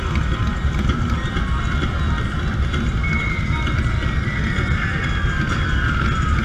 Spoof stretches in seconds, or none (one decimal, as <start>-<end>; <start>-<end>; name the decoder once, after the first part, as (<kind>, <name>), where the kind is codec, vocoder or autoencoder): none